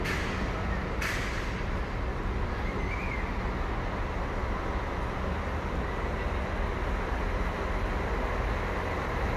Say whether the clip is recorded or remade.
recorded